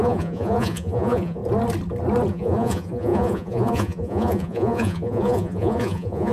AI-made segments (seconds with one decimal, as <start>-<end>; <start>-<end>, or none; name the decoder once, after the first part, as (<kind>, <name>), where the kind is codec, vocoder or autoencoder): 0.0-1.4 (vocoder, Vocos); 2.3-6.3